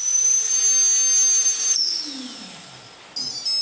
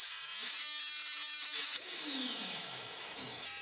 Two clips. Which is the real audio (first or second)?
first